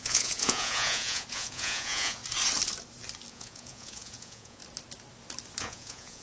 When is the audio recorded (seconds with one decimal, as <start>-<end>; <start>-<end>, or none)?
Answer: 2.2-3.3; 4.6-5.6